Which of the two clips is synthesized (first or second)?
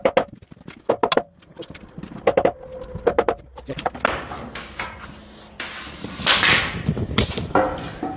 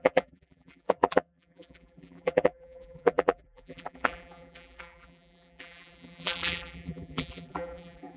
second